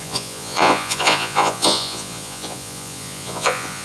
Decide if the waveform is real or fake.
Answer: fake